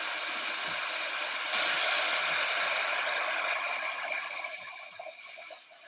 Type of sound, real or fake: real